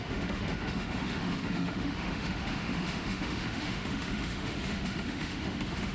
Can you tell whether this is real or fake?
fake